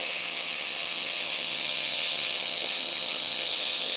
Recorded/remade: remade